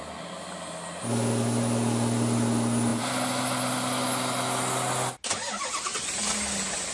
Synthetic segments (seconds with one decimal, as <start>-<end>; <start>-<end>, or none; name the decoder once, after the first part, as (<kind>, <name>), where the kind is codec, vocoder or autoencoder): none